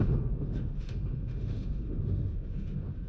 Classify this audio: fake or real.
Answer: fake